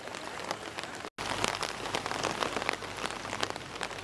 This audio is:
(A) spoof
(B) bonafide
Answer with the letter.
B